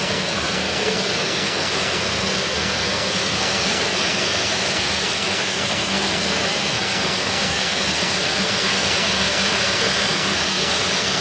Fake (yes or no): yes